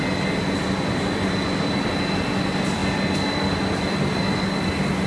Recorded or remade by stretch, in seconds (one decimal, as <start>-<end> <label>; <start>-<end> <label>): 0.0-5.1 recorded